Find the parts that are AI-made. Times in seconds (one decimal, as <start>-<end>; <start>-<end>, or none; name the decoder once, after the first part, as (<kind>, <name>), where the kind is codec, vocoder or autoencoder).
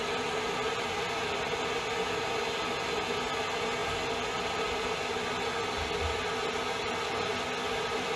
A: none